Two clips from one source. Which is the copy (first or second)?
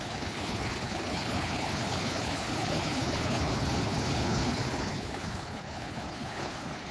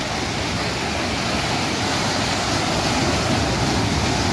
first